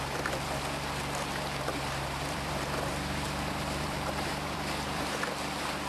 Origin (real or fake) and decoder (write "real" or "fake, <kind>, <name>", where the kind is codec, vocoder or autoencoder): fake, vocoder, BigVGAN v2